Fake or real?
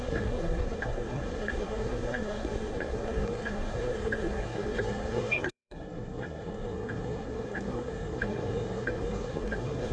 fake